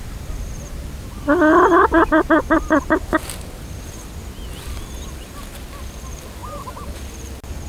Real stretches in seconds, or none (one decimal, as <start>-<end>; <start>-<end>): 0.0-6.4; 7.0-7.7